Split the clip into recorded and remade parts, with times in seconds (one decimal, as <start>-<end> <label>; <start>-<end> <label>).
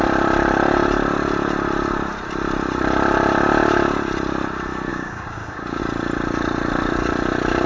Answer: 0.0-4.9 recorded; 4.9-5.8 remade; 5.8-7.7 recorded